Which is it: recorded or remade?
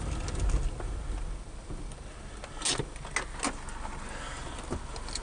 recorded